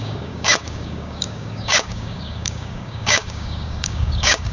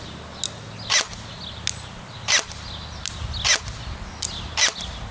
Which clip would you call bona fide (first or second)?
second